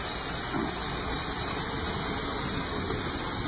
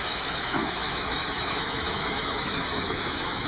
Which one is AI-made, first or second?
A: second